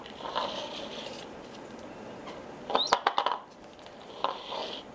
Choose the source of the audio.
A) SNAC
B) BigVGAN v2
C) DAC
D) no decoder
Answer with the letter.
B